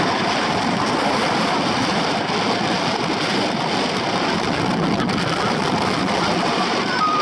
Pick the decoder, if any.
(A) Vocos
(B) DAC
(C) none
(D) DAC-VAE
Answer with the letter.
C